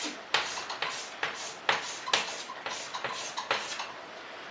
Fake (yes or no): no